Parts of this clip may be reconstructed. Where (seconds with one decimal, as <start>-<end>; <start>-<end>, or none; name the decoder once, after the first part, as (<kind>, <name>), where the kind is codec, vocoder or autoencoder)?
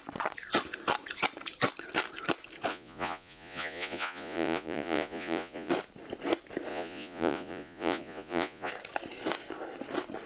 2.7-5.7 (vocoder, Vocos); 6.7-8.7